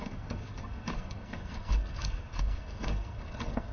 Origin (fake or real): fake